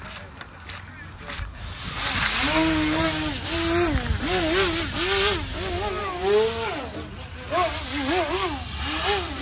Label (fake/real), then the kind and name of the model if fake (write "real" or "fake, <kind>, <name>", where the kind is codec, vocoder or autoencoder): real